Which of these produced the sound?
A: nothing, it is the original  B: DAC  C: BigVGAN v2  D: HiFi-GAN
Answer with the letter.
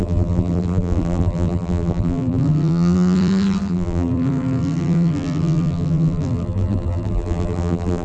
C